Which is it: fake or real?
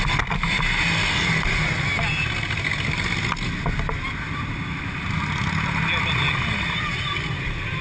real